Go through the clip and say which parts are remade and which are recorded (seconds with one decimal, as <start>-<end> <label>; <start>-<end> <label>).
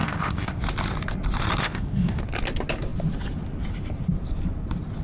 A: 0.0-0.6 remade; 0.6-1.6 recorded; 1.6-2.2 remade; 2.2-5.0 recorded